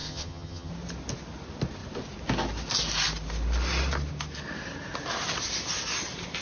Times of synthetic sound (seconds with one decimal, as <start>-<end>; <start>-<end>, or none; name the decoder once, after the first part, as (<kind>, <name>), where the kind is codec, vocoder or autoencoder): 0.0-0.7 (vocoder, HiFi-GAN)